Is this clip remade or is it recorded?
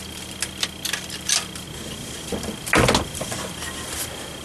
recorded